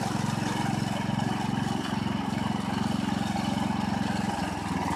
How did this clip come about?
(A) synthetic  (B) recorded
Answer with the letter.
B